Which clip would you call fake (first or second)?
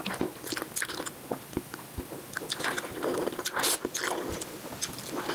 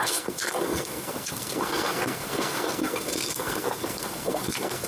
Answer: second